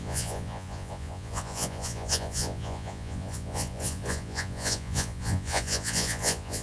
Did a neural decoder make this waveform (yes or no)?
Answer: yes